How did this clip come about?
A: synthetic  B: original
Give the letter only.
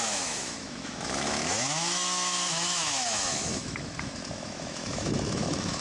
A